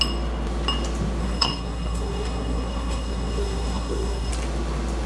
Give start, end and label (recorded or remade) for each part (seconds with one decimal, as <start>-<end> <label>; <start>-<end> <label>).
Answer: 0.0-1.2 recorded; 1.2-4.3 remade; 4.3-5.1 recorded